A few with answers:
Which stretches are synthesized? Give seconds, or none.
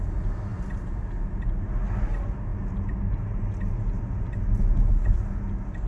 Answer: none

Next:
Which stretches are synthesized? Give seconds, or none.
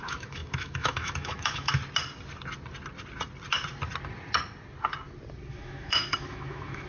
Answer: 0.0-1.8 (autoencoder, DAC-VAE); 5.5-6.9